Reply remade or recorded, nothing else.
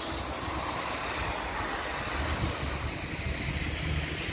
recorded